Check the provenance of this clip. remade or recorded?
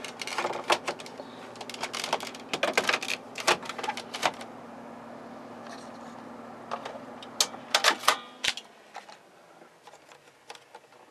recorded